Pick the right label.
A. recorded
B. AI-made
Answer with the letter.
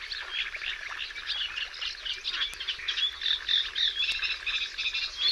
A